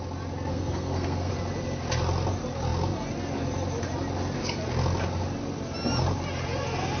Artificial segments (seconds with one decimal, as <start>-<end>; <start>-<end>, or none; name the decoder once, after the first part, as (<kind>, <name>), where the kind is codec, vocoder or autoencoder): 0.5-1.3 (codec, SNAC)